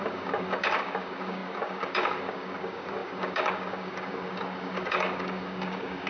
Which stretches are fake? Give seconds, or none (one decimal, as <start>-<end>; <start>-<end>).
0.0-6.1